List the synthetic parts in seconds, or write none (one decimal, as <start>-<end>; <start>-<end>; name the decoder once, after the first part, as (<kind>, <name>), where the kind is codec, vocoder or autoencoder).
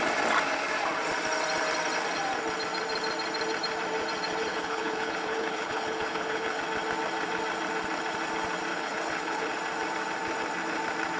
4.5-6.6 (codec, HILCodec); 8.7-9.5